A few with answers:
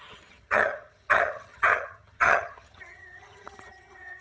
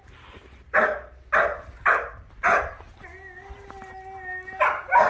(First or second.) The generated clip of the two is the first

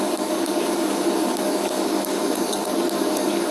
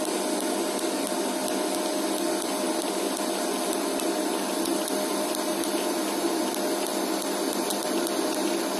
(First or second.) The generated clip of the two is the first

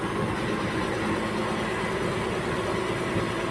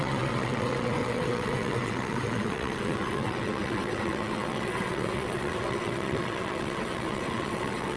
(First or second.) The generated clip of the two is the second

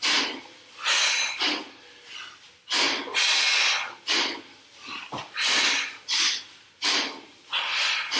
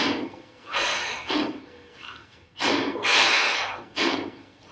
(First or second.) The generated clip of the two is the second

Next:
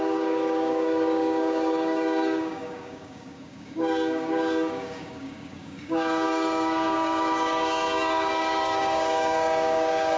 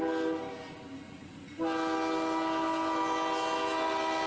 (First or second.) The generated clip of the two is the first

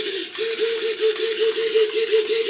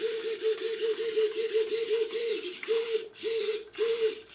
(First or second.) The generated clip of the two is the second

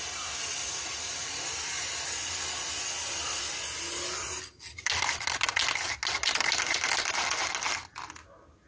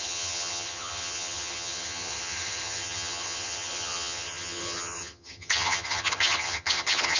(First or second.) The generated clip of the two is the second